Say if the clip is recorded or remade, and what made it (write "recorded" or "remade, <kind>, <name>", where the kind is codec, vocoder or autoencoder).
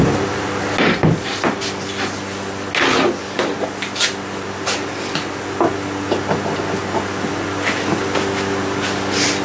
recorded